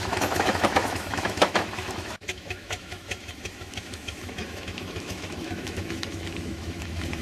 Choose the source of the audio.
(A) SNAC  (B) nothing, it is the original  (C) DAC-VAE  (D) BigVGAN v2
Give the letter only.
C